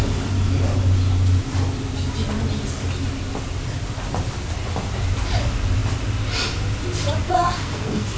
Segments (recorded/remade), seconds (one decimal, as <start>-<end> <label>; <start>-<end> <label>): 0.0-7.2 recorded; 7.2-8.2 remade